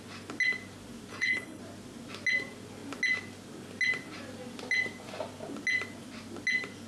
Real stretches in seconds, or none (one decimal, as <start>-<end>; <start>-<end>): 0.0-1.1; 1.6-6.9